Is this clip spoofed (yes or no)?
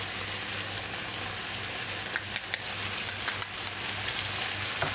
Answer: no